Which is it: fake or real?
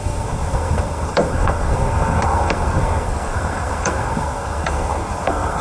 fake